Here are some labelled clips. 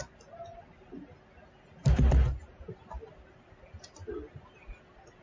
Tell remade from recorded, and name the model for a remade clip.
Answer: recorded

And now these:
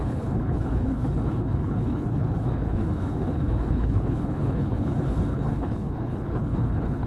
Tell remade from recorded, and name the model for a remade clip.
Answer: remade, codec, HILCodec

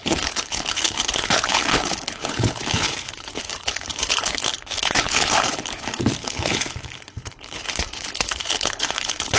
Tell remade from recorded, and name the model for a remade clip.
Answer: remade, codec, HILCodec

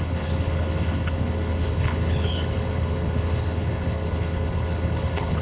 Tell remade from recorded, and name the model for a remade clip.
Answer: remade, codec, HILCodec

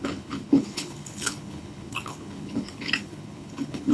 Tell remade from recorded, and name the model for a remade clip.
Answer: remade, codec, HILCodec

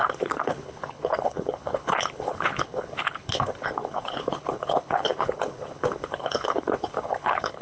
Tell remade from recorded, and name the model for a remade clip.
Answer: remade, codec, HILCodec